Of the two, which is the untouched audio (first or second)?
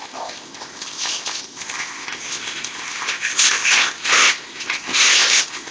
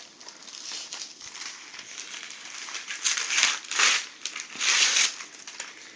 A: second